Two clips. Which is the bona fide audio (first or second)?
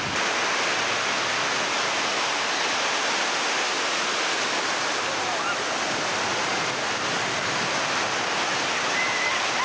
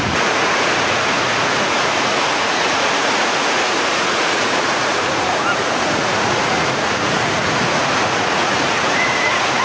first